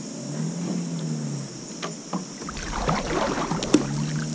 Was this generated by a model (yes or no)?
no